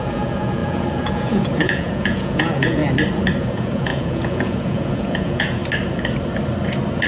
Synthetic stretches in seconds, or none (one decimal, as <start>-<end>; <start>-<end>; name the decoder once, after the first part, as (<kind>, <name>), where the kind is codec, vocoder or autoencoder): 0.0-2.8 (vocoder, Vocos); 3.4-5.6